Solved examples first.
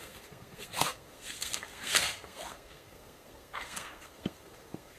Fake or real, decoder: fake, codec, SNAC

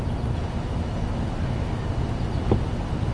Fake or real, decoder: real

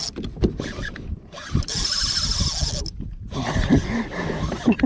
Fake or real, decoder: real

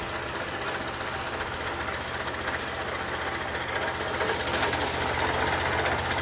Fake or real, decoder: real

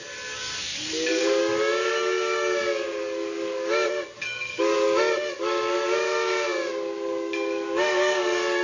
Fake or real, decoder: fake, codec, DAC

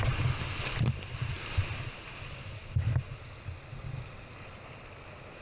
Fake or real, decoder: real